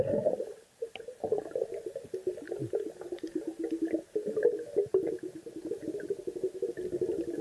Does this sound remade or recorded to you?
recorded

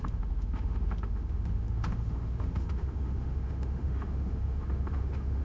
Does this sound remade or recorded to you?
remade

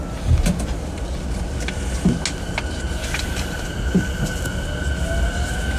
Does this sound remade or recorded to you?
recorded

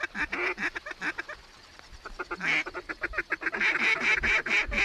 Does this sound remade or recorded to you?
recorded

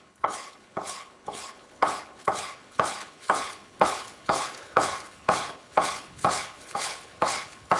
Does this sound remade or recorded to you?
remade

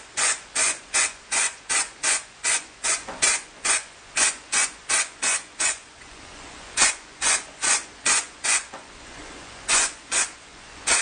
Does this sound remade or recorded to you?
remade